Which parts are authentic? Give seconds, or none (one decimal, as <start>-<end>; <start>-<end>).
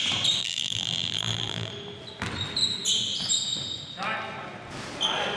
0.0-0.4; 1.7-5.4